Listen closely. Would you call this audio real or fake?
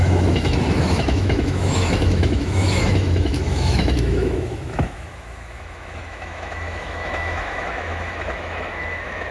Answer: fake